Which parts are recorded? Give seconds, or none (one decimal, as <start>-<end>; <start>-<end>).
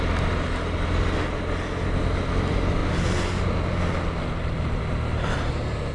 0.0-5.9